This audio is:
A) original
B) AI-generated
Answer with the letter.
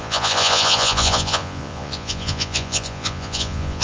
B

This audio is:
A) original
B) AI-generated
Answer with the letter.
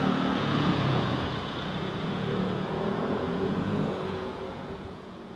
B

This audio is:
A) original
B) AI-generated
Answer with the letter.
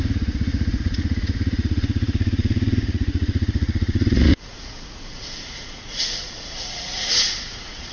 B